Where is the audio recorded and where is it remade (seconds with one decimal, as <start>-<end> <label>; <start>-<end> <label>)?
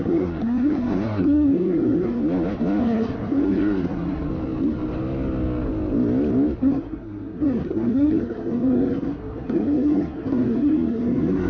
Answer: 0.0-2.2 remade; 2.2-2.8 recorded; 2.8-4.3 remade; 4.3-6.6 recorded; 6.6-11.5 remade